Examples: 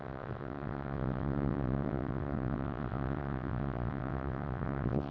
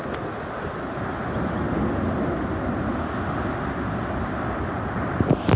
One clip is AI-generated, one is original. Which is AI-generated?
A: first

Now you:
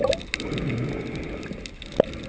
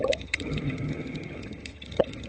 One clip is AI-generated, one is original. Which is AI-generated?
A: second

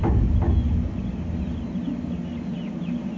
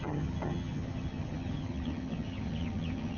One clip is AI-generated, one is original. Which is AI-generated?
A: second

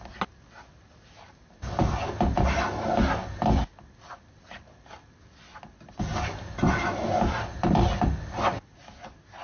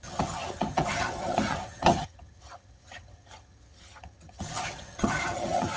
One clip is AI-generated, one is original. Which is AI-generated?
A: second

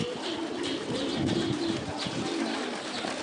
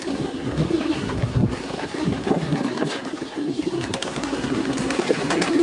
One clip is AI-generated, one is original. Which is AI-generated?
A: second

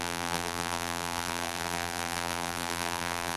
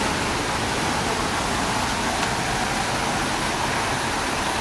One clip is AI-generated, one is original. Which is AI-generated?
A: first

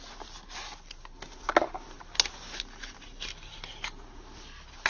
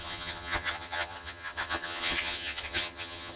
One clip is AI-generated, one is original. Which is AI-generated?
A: second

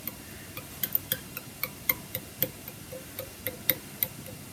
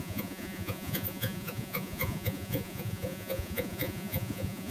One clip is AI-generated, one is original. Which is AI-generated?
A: second